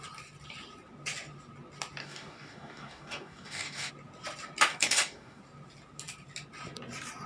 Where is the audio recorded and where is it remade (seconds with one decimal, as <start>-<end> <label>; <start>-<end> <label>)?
0.0-2.0 recorded; 2.0-3.9 remade; 3.9-4.7 recorded; 4.7-5.4 remade; 5.4-7.3 recorded